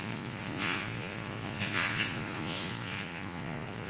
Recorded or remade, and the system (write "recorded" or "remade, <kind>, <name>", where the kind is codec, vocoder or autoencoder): remade, vocoder, Vocos